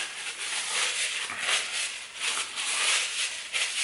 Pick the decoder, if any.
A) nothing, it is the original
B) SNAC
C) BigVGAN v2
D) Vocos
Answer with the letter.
A